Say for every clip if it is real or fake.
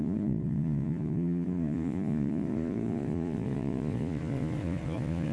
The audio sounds fake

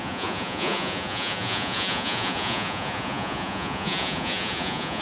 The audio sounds fake